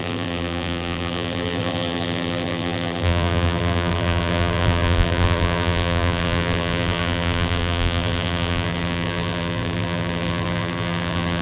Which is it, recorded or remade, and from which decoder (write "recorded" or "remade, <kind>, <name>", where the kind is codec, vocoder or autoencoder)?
remade, vocoder, BigVGAN v2